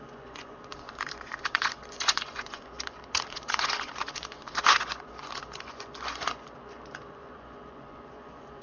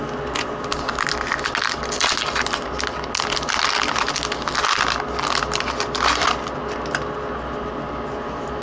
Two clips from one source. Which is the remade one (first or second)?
first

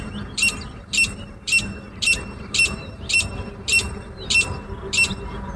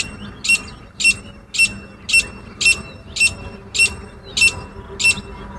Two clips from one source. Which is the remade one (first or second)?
first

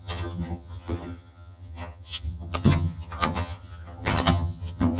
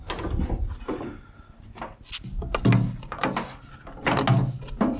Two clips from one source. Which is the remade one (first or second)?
first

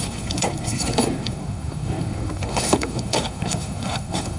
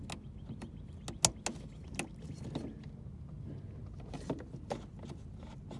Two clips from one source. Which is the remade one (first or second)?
first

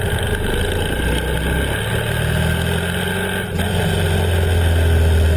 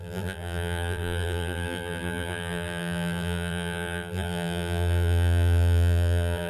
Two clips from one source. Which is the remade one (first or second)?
second